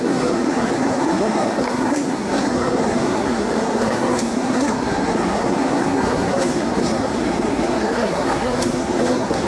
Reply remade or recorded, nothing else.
remade